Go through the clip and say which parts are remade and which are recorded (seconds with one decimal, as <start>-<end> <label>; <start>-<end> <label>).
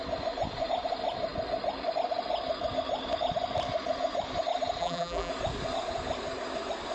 0.0-4.8 recorded; 4.8-5.3 remade; 5.3-6.9 recorded